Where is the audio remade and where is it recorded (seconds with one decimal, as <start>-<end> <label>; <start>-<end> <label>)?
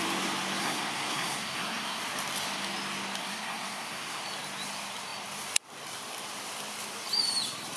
0.0-0.6 recorded; 0.6-2.0 remade; 2.0-3.2 recorded; 3.2-4.2 remade; 4.2-7.8 recorded